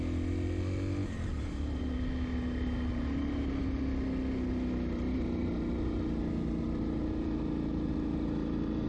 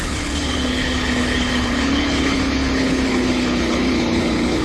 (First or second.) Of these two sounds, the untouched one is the first